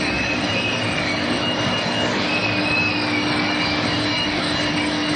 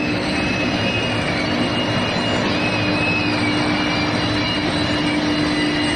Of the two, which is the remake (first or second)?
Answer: first